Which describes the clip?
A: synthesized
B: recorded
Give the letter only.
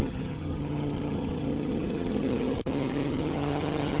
A